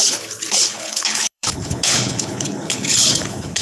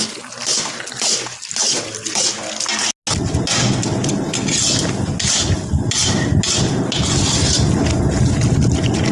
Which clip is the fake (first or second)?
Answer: first